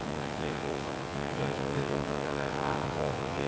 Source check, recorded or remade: remade